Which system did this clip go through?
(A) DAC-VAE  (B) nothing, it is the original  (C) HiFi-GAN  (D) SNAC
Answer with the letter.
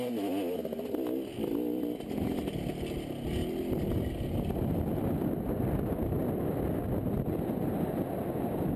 B